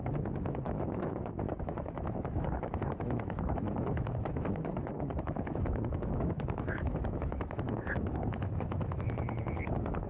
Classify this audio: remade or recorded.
remade